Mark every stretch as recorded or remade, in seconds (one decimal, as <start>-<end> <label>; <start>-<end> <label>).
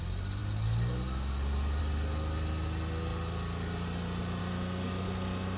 0.0-5.6 recorded